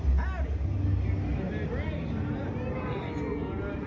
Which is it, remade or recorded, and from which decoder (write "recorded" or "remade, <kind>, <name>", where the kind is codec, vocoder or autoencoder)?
recorded